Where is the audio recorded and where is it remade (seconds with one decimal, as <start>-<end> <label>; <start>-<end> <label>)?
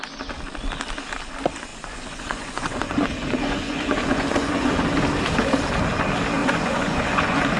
0.0-1.7 recorded; 1.7-4.8 remade; 4.8-6.4 recorded; 6.4-7.6 remade